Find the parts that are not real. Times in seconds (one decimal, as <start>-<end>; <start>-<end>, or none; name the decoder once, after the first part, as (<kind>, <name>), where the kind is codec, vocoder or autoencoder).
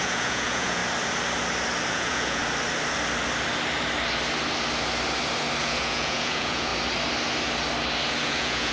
0.0-0.8 (vocoder, Vocos); 1.9-2.4; 5.6-6.7; 8.1-8.7